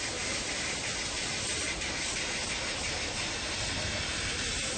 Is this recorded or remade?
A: recorded